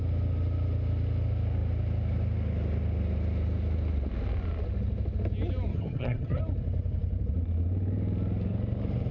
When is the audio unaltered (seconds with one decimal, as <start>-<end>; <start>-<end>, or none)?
0.0-5.7; 6.4-9.1